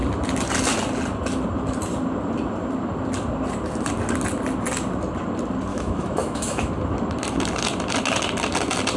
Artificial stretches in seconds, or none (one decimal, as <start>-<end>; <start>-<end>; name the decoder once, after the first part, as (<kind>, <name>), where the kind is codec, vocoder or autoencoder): 5.7-6.7 (autoencoder, DAC-VAE)